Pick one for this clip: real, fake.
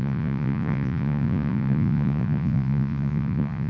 fake